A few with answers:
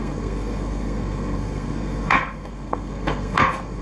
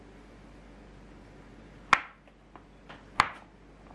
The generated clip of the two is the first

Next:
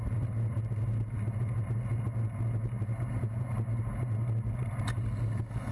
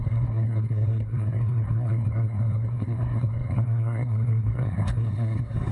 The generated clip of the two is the second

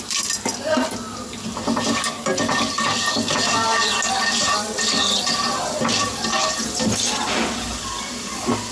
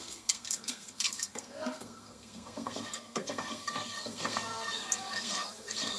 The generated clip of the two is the second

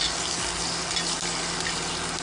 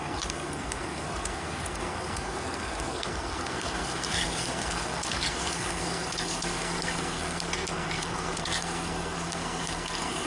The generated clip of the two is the second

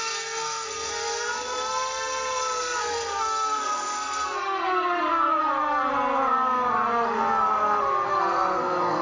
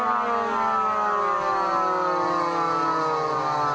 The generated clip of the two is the first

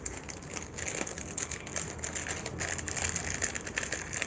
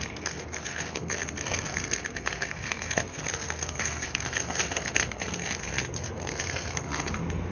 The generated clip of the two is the second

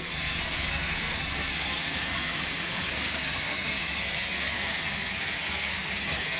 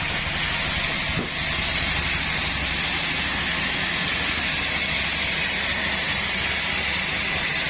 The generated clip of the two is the first